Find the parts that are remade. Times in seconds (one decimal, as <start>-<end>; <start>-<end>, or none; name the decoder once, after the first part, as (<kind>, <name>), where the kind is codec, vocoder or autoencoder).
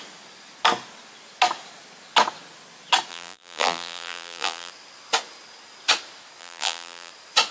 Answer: 3.1-4.7 (vocoder, BigVGAN v2); 6.4-7.1